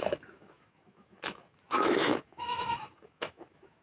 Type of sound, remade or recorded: remade